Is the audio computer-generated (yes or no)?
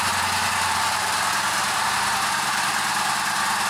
no